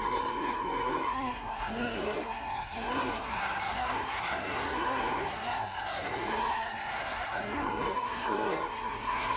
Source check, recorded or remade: remade